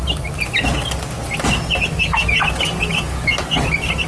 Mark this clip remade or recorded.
recorded